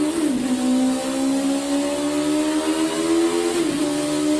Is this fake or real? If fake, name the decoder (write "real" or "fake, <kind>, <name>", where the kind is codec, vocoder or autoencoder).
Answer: real